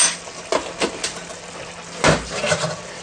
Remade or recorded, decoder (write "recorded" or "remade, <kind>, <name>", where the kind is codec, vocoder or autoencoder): recorded